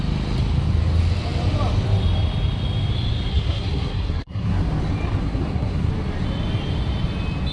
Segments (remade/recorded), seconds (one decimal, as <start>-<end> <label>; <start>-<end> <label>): 0.0-3.3 recorded; 3.3-4.7 remade; 4.7-5.2 recorded; 5.2-5.9 remade; 5.9-7.5 recorded